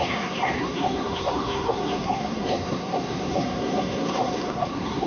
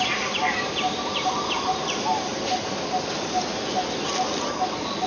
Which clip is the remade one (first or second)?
first